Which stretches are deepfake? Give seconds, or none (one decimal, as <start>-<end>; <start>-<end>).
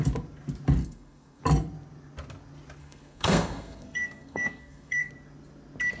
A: 0.8-1.4; 2.8-5.1